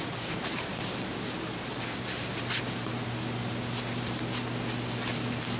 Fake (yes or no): no